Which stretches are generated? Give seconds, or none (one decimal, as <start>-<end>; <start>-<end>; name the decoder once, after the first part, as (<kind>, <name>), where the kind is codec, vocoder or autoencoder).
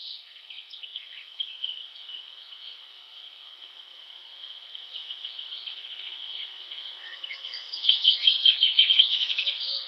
0.0-9.9 (codec, SNAC)